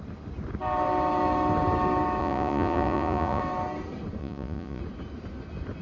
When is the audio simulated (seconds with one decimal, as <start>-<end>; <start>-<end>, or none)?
2.2-3.4; 4.2-4.8